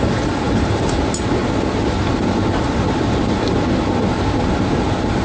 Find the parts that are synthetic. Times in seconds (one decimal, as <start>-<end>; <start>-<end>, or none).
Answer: 0.0-1.4; 4.1-5.2